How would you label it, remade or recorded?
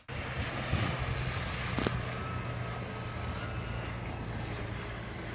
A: recorded